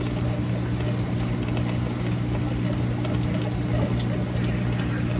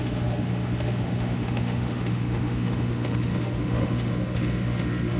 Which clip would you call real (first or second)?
first